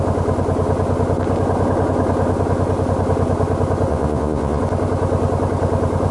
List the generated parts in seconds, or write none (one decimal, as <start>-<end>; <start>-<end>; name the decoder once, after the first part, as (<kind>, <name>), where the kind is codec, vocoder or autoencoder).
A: 3.9-4.6 (vocoder, Vocos)